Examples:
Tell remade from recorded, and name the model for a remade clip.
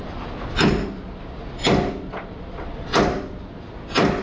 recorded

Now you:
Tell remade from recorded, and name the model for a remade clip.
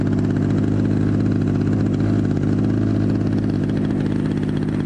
recorded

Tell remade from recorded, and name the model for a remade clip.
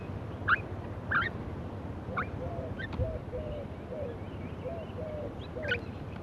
recorded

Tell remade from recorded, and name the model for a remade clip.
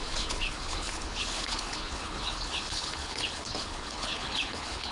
remade, codec, HILCodec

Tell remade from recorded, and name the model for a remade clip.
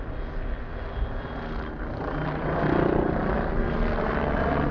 recorded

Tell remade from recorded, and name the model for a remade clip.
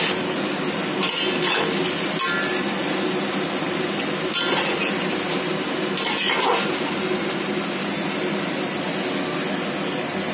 recorded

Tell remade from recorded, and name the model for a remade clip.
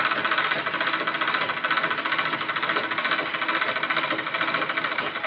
recorded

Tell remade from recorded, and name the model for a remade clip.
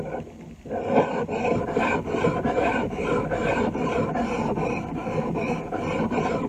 recorded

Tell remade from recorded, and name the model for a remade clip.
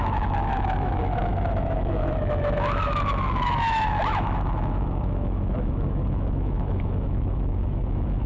remade, autoencoder, DAC-VAE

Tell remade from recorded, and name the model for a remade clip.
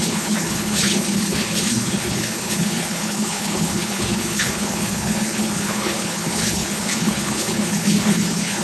remade, codec, HILCodec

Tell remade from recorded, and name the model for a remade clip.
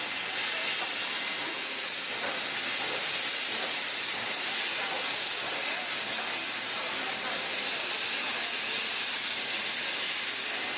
recorded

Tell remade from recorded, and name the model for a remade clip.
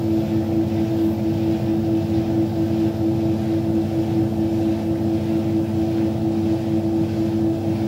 recorded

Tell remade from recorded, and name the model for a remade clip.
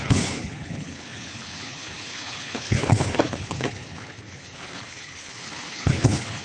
remade, codec, HILCodec